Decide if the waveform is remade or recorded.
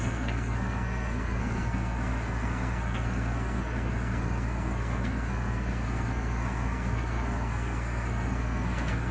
remade